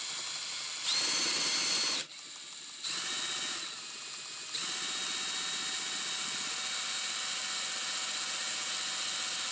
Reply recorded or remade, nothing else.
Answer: recorded